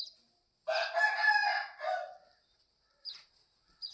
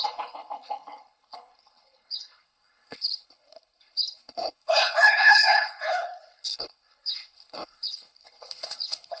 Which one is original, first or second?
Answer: first